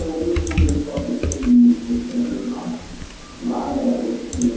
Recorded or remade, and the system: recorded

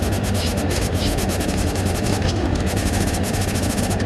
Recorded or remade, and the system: remade, autoencoder, DAC-VAE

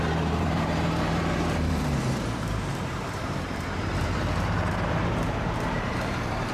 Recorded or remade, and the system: remade, vocoder, BigVGAN v2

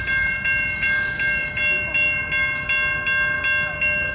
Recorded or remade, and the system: recorded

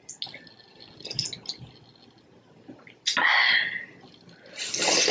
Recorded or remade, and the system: recorded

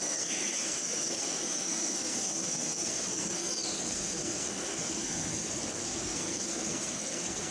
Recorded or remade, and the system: remade, codec, SNAC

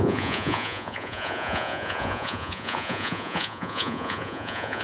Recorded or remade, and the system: remade, vocoder, Vocos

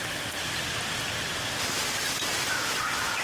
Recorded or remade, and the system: recorded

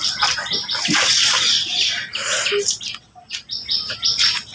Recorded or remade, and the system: recorded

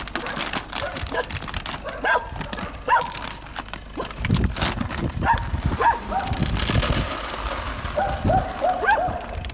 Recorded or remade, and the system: recorded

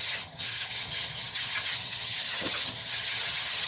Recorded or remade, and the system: remade, vocoder, HiFi-GAN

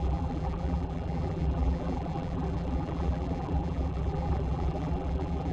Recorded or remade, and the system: remade, vocoder, BigVGAN v2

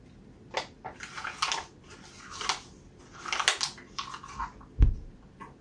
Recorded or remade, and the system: recorded